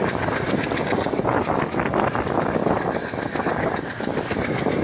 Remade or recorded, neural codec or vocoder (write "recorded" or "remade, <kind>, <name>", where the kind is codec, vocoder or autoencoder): recorded